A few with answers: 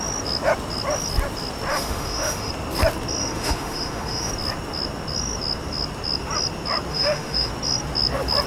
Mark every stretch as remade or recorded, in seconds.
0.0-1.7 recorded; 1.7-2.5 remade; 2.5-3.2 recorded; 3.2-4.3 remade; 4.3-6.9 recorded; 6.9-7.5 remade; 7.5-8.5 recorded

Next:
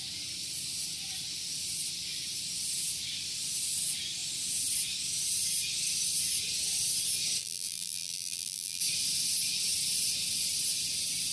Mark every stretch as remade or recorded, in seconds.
0.0-7.4 recorded; 7.4-8.8 remade; 8.8-11.3 recorded

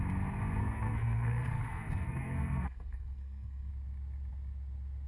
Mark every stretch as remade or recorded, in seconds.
0.0-0.6 recorded; 0.6-3.7 remade; 3.7-5.1 recorded

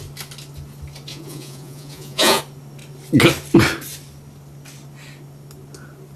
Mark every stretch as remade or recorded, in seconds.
0.0-1.1 recorded; 1.1-2.4 remade; 2.4-6.2 recorded

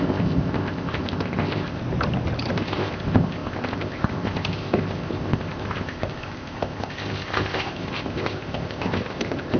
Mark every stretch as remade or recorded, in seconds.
0.0-1.8 remade; 1.8-2.5 recorded; 2.5-9.6 remade